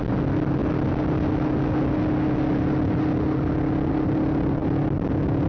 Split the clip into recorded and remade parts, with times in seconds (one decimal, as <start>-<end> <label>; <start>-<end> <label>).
0.0-5.5 recorded